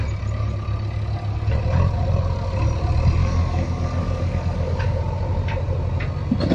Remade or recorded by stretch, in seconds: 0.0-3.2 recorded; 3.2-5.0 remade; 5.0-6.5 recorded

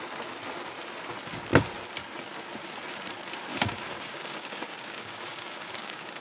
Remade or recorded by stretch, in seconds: 0.0-3.5 recorded; 3.5-6.2 remade

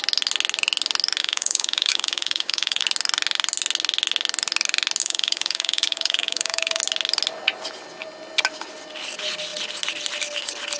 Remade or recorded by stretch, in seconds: 0.0-1.2 recorded; 1.2-2.8 remade; 2.8-5.0 recorded; 5.0-6.8 remade; 6.8-10.8 recorded

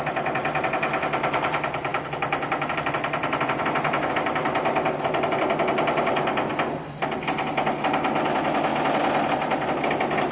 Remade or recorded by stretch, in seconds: 0.0-10.3 recorded

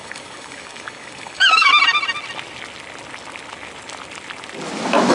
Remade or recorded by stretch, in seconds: 0.0-1.7 remade; 1.7-5.1 recorded